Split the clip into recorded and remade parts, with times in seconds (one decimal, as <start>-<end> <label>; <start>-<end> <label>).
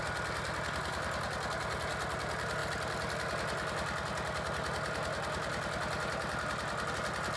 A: 0.0-7.4 recorded